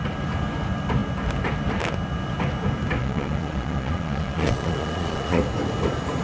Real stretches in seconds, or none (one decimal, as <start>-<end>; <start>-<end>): 0.0-3.0; 5.4-6.2